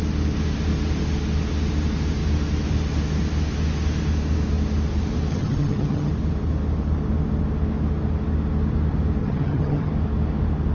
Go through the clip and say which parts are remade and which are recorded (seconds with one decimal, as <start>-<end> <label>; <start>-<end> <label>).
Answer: 0.0-5.3 recorded; 5.3-6.1 remade; 6.1-9.2 recorded; 9.2-9.9 remade; 9.9-10.7 recorded